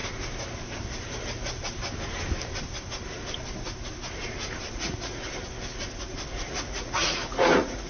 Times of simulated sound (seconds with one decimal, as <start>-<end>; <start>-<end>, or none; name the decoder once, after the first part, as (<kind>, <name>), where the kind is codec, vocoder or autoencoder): 4.7-5.3 (vocoder, Vocos); 6.5-7.9